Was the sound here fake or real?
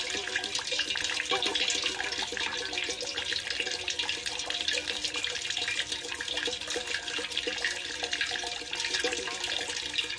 real